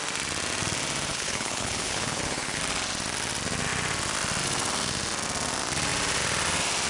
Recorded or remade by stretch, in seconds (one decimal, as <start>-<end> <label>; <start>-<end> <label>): 0.0-1.1 recorded; 1.1-2.6 remade; 2.6-6.9 recorded